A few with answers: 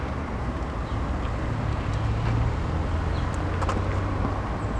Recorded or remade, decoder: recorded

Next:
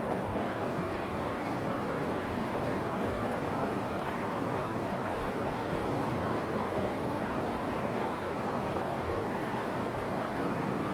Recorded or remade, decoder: remade, codec, DAC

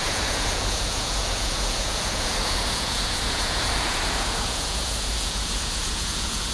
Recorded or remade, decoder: remade, vocoder, Vocos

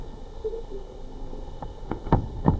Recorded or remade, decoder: remade, codec, SNAC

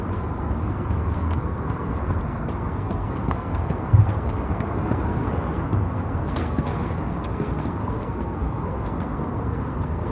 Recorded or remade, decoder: remade, codec, SNAC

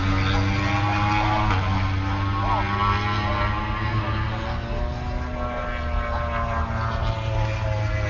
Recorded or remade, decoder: recorded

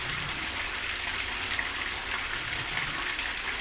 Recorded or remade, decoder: recorded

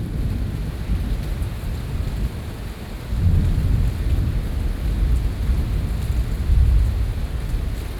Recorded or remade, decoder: recorded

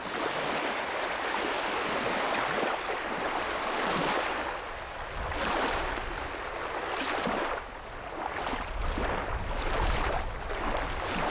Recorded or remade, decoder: recorded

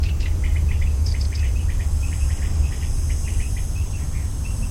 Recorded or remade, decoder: remade, vocoder, BigVGAN v2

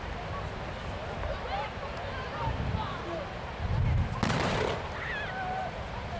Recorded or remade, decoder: recorded